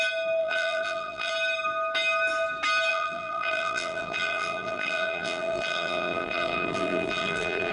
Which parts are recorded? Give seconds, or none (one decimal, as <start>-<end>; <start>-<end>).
0.0-0.4; 1.3-2.9